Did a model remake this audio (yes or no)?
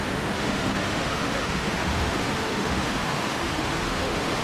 yes